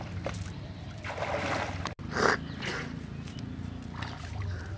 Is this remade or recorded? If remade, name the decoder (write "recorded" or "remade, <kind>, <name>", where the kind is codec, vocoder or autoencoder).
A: recorded